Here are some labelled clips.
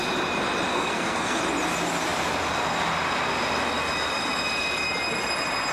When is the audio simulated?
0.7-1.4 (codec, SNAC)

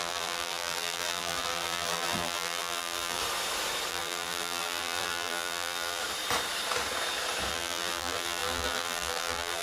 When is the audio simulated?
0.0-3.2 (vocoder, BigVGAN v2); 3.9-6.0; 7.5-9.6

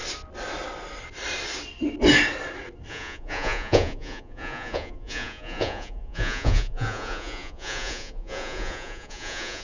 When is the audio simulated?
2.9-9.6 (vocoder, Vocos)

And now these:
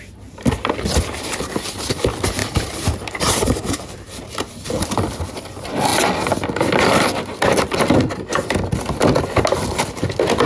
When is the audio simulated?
2.4-4.5 (vocoder, BigVGAN v2)

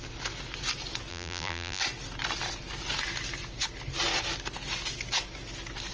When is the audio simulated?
1.1-1.8 (vocoder, BigVGAN v2)

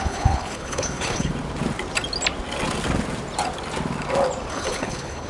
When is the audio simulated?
0.0-1.3 (codec, HILCodec); 4.5-5.3

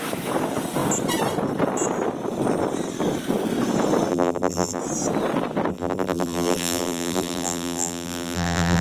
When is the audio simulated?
4.1-4.8 (vocoder, BigVGAN v2); 5.7-8.8